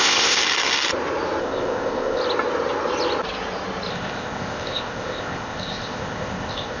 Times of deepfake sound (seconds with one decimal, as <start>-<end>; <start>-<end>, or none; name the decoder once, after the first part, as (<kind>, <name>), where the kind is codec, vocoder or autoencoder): 0.0-0.4 (codec, ZipCodec); 1.4-2.2; 3.9-6.8